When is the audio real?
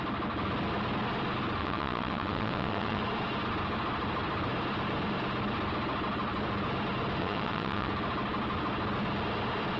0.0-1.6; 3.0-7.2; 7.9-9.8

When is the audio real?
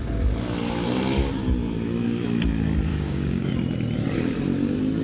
0.0-2.9; 3.5-5.0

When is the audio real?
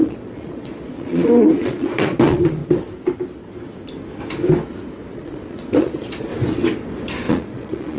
2.6-5.1; 6.3-7.3